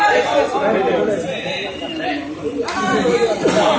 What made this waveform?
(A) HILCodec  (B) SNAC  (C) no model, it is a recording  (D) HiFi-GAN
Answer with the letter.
C